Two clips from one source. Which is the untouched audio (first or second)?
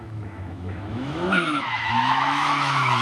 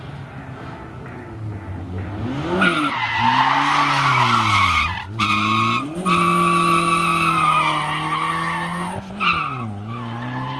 second